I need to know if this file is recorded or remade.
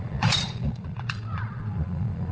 remade